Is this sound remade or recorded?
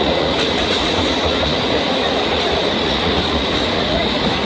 remade